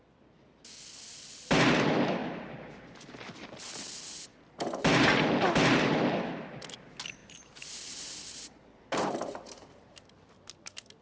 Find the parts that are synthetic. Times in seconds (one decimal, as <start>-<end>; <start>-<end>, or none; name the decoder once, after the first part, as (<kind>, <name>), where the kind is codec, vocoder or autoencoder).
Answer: 2.2-3.2 (vocoder, BigVGAN v2); 4.3-4.8; 7.2-10.3

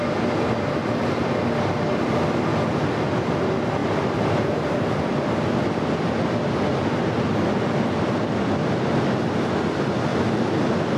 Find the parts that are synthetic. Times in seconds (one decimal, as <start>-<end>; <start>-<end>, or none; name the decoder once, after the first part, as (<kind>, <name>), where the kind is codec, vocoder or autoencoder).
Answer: 3.8-5.1 (vocoder, BigVGAN v2)